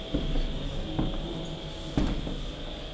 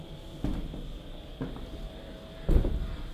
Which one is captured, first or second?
first